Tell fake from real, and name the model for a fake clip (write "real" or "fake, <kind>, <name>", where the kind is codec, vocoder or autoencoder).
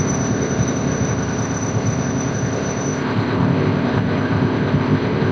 fake, codec, ZipCodec